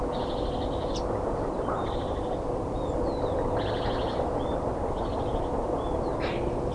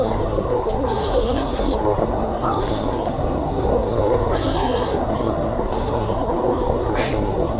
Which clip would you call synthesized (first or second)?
second